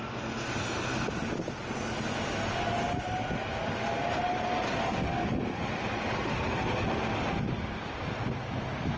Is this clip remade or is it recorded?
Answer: recorded